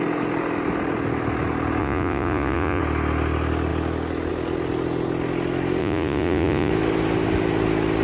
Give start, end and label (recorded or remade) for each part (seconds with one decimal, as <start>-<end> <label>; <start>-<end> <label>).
0.0-1.8 recorded; 1.8-2.8 remade; 2.8-5.8 recorded; 5.8-6.7 remade; 6.7-8.0 recorded

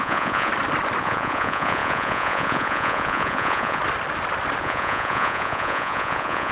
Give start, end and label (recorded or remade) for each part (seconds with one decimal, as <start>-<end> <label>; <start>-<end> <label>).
0.0-0.5 remade; 0.5-1.0 recorded; 1.0-3.8 remade; 3.8-4.6 recorded; 4.6-6.5 remade

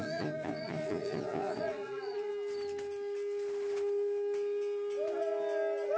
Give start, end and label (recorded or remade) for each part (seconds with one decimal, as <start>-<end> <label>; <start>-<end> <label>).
0.0-2.3 remade; 2.3-6.0 recorded

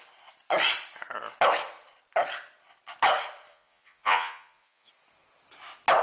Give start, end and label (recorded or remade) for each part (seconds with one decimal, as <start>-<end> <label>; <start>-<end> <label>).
0.0-3.5 recorded; 3.5-4.9 remade; 4.9-6.0 recorded

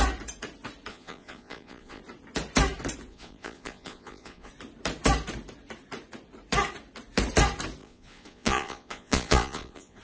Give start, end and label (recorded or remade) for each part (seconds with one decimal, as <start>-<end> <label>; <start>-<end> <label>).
0.0-0.9 recorded; 0.9-2.0 remade; 2.0-3.1 recorded; 3.1-4.5 remade; 4.5-7.8 recorded; 7.8-10.0 remade

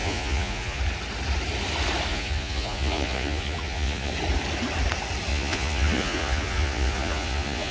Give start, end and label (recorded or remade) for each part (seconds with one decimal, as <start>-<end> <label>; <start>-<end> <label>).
0.0-0.8 remade; 0.8-2.1 recorded; 2.1-4.1 remade; 4.1-5.3 recorded; 5.3-7.7 remade